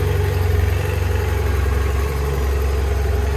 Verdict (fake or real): real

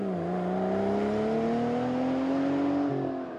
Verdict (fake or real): real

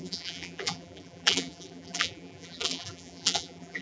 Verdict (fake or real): fake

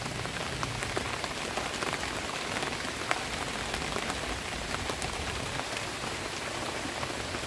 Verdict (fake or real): real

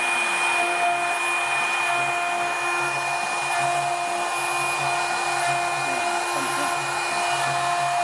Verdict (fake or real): real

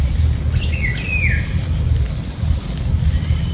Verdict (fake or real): real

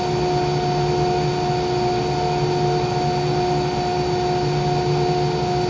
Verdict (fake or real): real